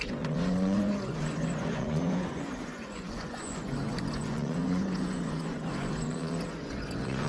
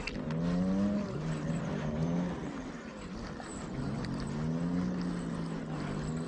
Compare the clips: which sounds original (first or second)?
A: second